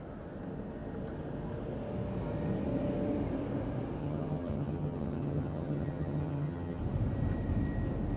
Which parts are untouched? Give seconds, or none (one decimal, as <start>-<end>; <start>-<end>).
0.0-4.0; 6.8-8.2